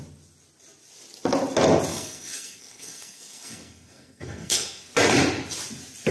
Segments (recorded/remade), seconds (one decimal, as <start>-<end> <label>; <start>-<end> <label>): 0.0-1.9 recorded; 1.9-4.9 remade; 4.9-6.1 recorded